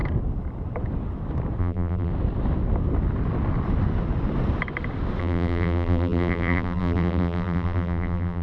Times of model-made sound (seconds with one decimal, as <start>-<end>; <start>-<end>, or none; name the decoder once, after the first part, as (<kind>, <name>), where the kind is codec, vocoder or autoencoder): 1.6-2.1 (vocoder, BigVGAN v2); 5.2-8.4